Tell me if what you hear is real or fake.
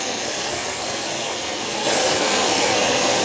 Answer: fake